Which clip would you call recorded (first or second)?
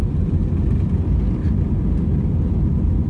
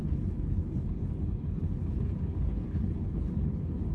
first